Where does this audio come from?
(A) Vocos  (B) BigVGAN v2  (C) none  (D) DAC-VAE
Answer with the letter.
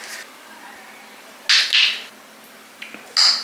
C